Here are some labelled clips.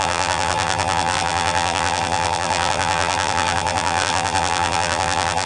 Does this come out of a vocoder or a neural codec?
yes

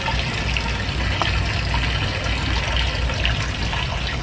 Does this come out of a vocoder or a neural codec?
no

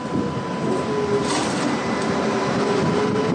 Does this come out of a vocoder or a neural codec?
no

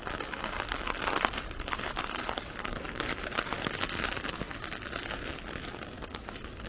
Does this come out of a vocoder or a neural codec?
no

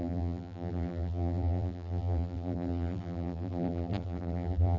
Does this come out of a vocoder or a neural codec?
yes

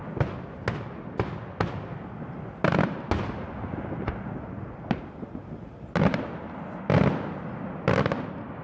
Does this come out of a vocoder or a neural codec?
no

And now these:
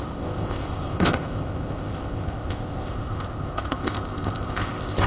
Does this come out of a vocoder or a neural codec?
yes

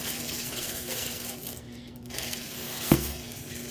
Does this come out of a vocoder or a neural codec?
yes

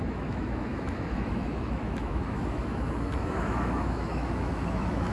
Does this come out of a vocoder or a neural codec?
yes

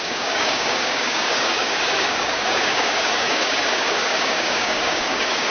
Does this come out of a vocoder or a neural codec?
yes